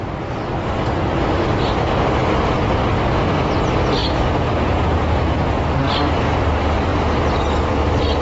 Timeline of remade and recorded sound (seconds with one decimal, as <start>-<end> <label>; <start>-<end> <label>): 0.0-4.0 recorded; 4.0-5.6 remade; 5.6-8.2 recorded